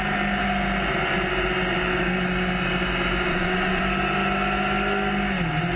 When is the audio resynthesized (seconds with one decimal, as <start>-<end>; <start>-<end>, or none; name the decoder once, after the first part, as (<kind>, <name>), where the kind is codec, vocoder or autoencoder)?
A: 3.3-3.8 (vocoder, WaveNeXt)

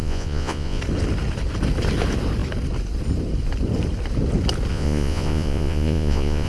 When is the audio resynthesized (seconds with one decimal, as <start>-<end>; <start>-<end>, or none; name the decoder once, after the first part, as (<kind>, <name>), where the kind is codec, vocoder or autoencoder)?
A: 0.0-0.8 (vocoder, Vocos); 4.7-6.5

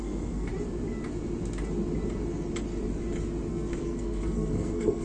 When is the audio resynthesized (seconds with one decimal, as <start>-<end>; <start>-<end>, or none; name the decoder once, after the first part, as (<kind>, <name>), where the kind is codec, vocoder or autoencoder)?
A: 0.0-0.5 (codec, SNAC); 3.5-5.0

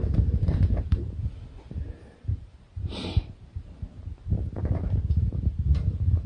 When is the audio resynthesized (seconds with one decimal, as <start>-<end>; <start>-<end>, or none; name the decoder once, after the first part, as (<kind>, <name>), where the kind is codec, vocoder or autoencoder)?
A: 0.0-3.8 (vocoder, BigVGAN v2); 5.2-6.3

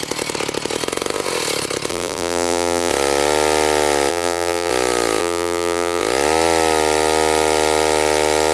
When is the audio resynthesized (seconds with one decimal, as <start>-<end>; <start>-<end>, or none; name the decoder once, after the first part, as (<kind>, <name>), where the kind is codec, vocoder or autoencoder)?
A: 1.9-2.9 (vocoder, BigVGAN v2); 4.1-4.7; 5.2-6.0